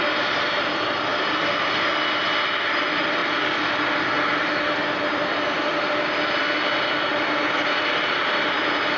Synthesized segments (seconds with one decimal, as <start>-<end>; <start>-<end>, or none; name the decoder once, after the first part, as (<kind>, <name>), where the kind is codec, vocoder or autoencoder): none